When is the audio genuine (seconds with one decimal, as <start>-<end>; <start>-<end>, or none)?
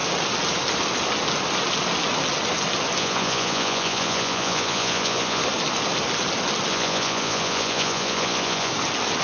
0.0-3.0; 5.4-6.7; 8.7-9.2